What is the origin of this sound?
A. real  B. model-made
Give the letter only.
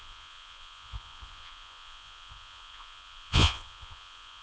B